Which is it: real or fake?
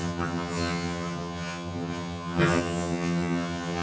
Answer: fake